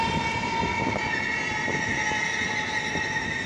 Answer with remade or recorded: recorded